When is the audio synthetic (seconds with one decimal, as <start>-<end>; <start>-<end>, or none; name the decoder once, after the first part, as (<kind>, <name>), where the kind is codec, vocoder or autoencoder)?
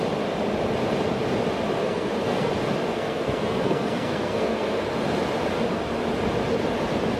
1.8-2.5 (codec, SNAC); 2.9-4.9